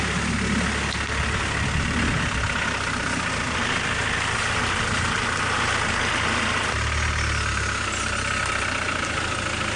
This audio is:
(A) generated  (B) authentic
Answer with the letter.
B